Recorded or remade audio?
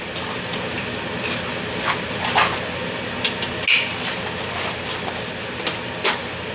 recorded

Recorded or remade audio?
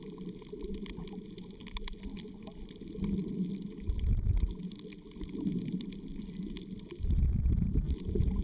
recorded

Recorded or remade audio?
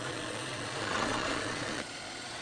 remade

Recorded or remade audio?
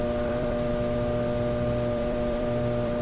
remade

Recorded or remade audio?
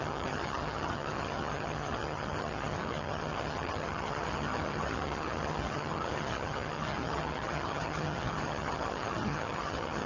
remade